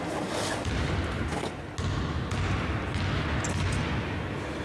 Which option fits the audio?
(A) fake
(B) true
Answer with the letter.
B